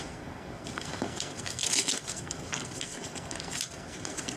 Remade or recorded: remade